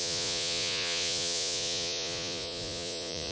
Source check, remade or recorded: remade